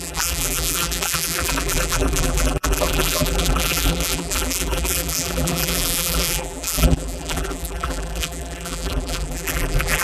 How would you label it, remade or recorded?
remade